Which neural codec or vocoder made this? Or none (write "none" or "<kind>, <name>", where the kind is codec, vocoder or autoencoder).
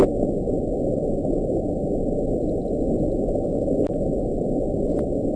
none